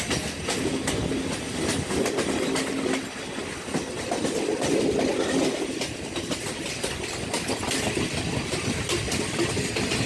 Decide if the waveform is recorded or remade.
recorded